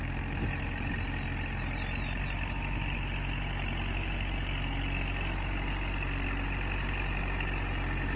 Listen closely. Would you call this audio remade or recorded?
recorded